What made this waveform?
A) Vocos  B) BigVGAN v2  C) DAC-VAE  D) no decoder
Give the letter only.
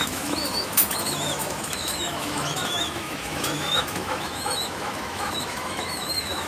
C